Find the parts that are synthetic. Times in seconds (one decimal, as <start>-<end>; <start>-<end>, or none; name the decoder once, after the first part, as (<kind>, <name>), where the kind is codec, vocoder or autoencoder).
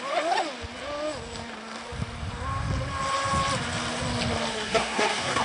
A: 4.5-5.4 (codec, SNAC)